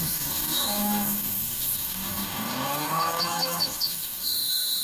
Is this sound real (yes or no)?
no